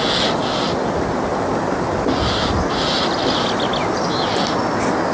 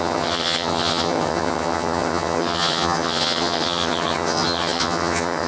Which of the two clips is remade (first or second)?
second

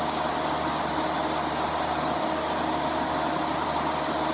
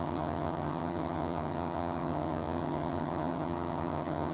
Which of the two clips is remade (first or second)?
second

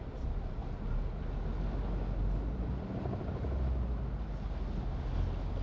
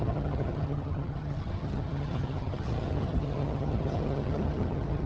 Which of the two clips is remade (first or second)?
second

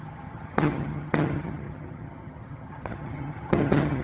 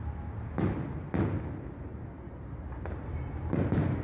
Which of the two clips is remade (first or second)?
first